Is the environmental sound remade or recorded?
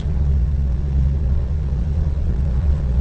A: remade